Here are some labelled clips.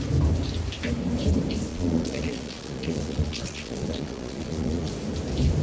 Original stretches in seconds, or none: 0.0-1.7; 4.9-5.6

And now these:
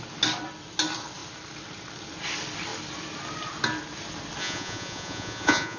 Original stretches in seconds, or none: 0.0-4.4

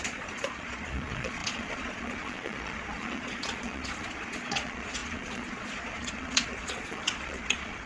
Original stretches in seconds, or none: none

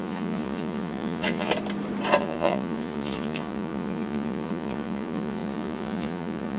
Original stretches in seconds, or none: 1.5-2.2

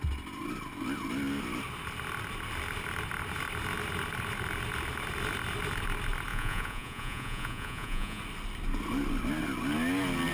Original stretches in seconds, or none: 0.0-6.3; 8.2-10.3

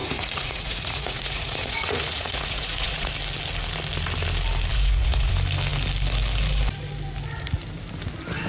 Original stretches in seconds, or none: 3.1-4.7; 5.3-8.5